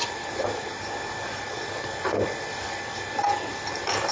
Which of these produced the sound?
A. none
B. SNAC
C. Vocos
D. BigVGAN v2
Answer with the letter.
D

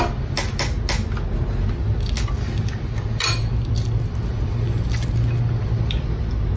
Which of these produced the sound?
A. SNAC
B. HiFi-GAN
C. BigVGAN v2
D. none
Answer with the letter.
D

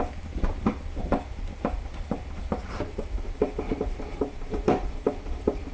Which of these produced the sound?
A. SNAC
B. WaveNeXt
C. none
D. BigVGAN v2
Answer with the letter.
D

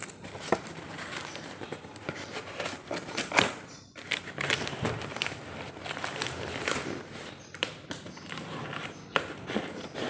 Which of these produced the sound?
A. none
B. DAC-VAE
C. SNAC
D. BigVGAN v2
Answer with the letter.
D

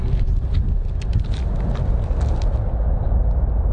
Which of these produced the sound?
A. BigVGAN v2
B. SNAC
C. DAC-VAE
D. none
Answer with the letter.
D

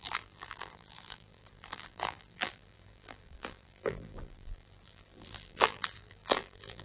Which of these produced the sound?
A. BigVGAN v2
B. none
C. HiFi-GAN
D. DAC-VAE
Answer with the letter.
A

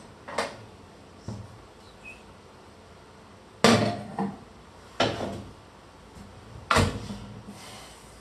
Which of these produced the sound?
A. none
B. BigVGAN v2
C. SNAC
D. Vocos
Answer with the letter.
A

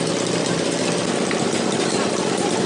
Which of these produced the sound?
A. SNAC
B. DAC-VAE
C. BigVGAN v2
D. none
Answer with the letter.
C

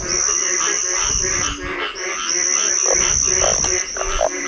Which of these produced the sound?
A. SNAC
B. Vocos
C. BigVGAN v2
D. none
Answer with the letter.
C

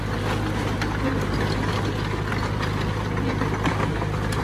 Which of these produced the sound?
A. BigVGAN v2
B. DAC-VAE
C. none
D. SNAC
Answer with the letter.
C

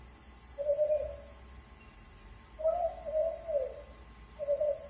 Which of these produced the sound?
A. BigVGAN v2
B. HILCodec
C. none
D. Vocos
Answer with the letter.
C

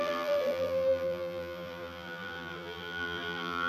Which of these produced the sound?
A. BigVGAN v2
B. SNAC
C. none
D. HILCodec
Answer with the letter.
A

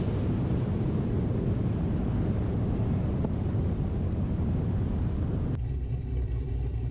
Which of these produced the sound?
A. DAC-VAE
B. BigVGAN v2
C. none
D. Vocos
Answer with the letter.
B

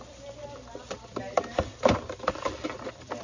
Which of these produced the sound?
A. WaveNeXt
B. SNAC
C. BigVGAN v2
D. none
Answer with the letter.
C